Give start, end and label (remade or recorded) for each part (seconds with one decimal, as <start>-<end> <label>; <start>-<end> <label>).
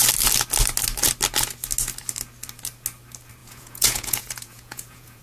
0.0-3.4 recorded; 3.4-5.2 remade